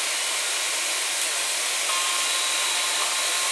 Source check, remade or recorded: recorded